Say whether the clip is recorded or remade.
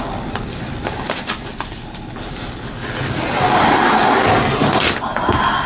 recorded